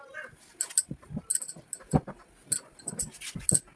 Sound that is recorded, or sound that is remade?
recorded